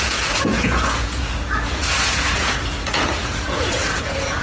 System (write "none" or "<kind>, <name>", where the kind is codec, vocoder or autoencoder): vocoder, Vocos